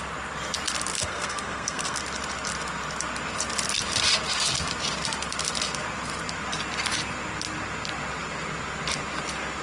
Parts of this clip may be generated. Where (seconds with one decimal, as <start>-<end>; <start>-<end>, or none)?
0.9-2.0